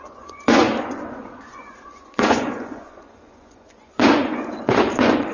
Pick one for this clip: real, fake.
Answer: fake